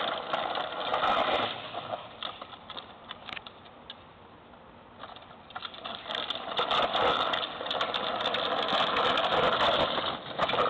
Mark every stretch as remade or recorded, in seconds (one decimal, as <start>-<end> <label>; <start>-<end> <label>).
0.0-10.7 recorded